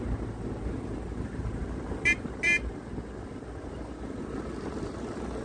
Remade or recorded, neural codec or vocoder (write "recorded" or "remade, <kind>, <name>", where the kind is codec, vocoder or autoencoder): recorded